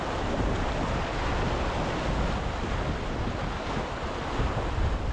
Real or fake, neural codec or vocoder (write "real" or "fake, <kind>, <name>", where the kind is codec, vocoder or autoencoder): real